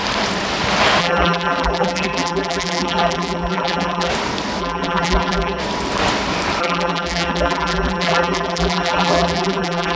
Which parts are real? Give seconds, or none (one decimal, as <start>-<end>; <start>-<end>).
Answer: 0.0-1.0; 4.1-4.6; 5.6-6.6